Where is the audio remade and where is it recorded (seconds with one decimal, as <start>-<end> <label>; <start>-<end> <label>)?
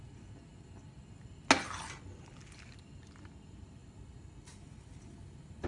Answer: 0.0-5.7 recorded